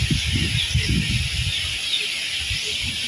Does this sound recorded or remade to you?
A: recorded